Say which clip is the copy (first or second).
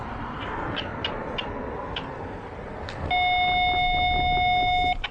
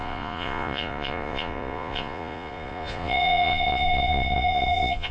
second